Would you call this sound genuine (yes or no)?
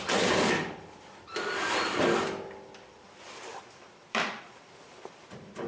no